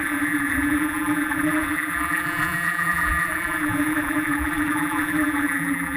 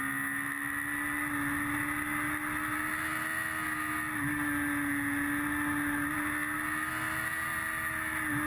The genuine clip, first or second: second